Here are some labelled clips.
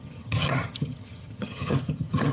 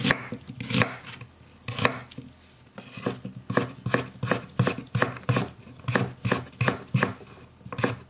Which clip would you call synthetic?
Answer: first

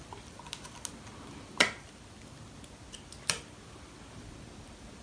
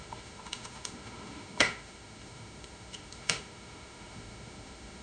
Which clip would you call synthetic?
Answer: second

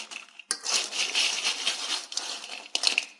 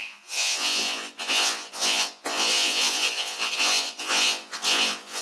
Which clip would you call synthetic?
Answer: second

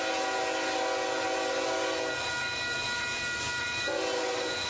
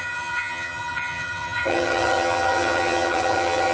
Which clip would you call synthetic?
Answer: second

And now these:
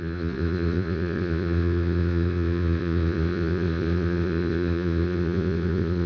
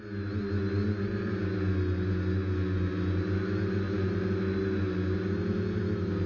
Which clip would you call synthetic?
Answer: first